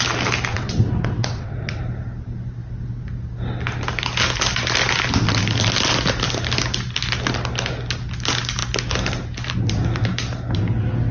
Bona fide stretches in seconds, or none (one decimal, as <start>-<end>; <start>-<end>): 0.0-0.5; 1.8-11.1